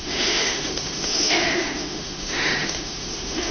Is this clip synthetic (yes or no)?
yes